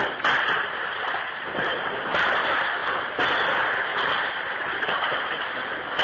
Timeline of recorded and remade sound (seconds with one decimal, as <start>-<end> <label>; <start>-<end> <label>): 0.0-1.7 recorded; 1.7-2.3 remade; 2.3-3.9 recorded; 3.9-5.3 remade; 5.3-6.0 recorded